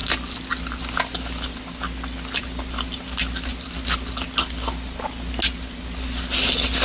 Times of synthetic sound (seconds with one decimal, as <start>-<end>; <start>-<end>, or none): none